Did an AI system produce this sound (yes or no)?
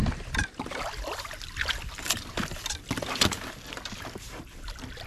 no